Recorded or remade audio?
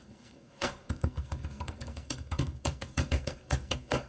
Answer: remade